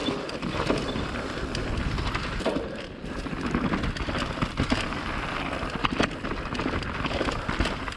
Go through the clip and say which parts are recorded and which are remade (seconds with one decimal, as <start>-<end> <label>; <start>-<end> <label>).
0.0-8.0 recorded